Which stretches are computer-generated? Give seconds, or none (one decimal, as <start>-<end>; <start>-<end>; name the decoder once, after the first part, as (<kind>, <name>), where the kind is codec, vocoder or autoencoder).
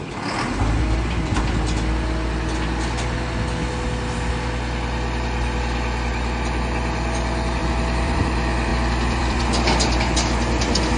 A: 7.6-8.2 (vocoder, BigVGAN v2); 8.7-9.4